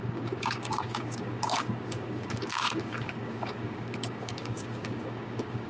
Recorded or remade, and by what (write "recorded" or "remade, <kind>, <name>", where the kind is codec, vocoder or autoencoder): remade, codec, DAC